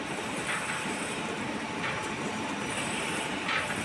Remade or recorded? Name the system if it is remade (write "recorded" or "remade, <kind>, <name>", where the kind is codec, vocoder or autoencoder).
remade, vocoder, BigVGAN v2